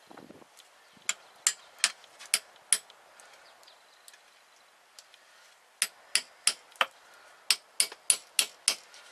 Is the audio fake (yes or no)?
no